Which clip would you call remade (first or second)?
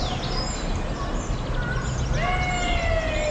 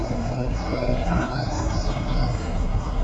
second